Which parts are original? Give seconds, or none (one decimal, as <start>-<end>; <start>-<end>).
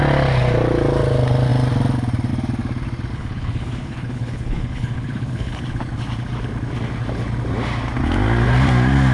0.0-3.1; 5.6-9.1